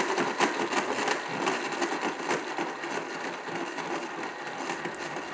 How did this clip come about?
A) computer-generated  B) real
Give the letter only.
B